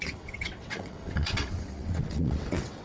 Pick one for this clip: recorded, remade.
remade